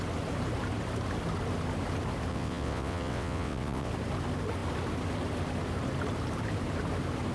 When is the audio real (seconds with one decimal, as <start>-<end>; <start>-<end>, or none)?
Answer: 0.0-2.3; 3.9-7.3